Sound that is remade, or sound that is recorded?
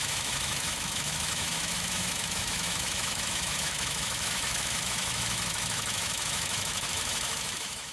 remade